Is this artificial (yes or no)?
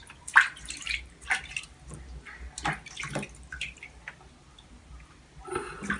no